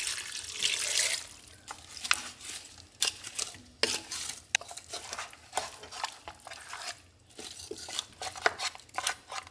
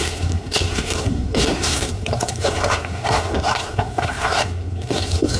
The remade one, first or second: second